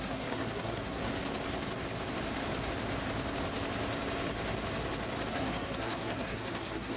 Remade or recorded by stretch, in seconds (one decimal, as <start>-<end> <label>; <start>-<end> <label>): 0.0-1.1 remade; 1.1-5.3 recorded; 5.3-7.0 remade

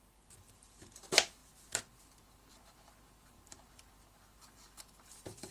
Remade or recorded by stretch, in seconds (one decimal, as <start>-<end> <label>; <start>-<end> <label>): 0.0-5.5 remade

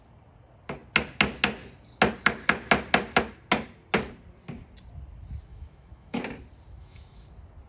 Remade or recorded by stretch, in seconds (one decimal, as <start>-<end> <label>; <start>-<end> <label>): 0.0-5.5 recorded; 5.5-6.2 remade; 6.2-6.8 recorded; 6.8-7.3 remade; 7.3-7.7 recorded

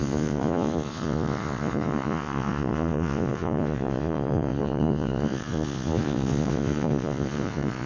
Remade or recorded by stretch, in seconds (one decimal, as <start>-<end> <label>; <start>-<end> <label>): 0.0-7.9 remade

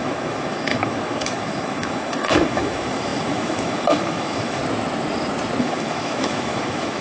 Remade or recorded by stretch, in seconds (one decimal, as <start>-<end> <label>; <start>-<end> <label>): 0.0-4.6 remade; 4.6-5.6 recorded; 5.6-7.0 remade

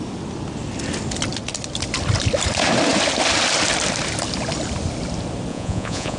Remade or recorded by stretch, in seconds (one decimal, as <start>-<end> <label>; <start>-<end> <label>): 0.0-5.5 recorded; 5.5-6.2 remade

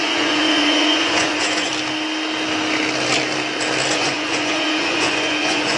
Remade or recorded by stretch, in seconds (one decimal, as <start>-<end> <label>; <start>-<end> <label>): 0.0-1.7 remade; 1.7-3.9 recorded; 3.9-5.8 remade